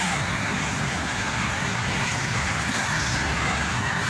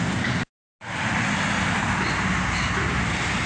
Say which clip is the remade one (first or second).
first